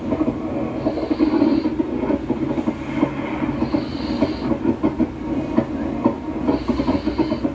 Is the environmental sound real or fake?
real